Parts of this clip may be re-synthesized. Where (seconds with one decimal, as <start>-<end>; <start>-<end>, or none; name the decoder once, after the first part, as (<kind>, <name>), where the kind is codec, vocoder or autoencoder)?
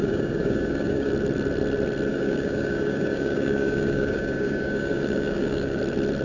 0.0-1.1 (codec, DAC); 2.1-5.8